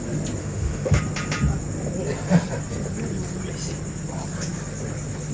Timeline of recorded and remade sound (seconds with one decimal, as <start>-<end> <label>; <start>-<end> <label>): 0.0-0.4 recorded; 0.4-1.0 remade; 1.0-5.3 recorded